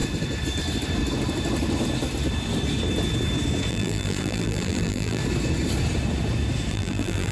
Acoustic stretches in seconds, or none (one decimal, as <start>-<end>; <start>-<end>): 0.0-3.7; 5.2-6.7